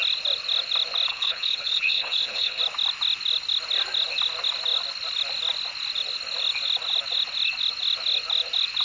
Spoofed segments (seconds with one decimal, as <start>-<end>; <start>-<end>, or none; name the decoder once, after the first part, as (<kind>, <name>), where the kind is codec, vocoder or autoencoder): 1.1-2.6 (codec, HILCodec)